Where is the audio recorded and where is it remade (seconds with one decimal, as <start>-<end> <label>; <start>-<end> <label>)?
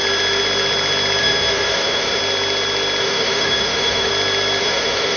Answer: 0.0-1.2 recorded; 1.2-2.2 remade; 2.2-3.0 recorded; 3.0-4.1 remade; 4.1-4.6 recorded; 4.6-5.2 remade